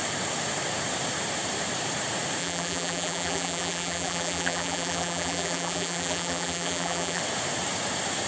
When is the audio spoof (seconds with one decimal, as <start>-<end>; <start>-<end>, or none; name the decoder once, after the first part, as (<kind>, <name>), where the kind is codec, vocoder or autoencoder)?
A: 2.4-7.2 (vocoder, BigVGAN v2)

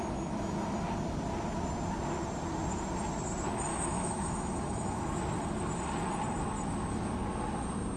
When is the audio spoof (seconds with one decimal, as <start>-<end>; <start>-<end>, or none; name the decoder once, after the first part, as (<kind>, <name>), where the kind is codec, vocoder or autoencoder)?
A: 3.7-5.2 (autoencoder, DAC-VAE)

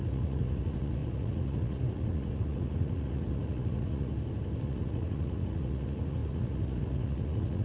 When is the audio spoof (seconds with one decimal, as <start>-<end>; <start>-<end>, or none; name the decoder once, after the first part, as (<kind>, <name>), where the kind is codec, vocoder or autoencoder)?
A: 0.0-4.1 (vocoder, Vocos); 4.6-7.6

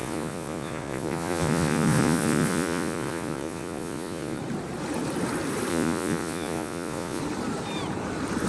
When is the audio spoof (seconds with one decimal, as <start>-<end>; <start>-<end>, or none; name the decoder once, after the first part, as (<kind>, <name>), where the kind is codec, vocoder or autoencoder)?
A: 0.0-4.4 (vocoder, Vocos); 5.7-7.2